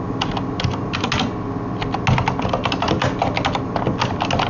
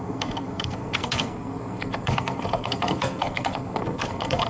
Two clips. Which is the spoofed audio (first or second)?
second